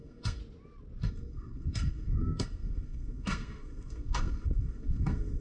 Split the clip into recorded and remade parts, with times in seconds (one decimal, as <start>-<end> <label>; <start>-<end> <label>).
0.0-0.4 remade; 0.4-1.0 recorded; 1.0-5.4 remade